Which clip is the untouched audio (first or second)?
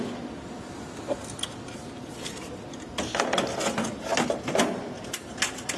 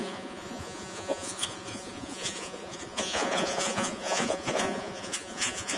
first